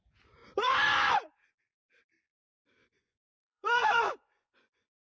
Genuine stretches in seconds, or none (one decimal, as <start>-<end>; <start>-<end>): 0.0-0.4; 1.6-2.8